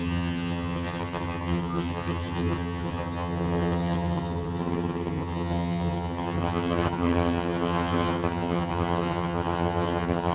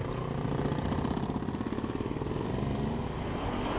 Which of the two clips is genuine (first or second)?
second